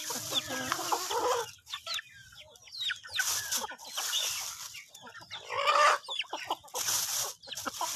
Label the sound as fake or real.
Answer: real